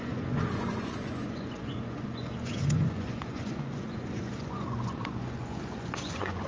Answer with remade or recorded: remade